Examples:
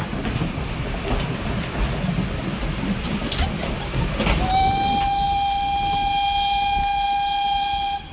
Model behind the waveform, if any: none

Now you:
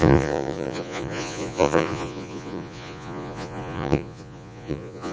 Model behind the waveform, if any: vocoder, Vocos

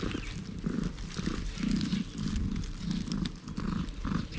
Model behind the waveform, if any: none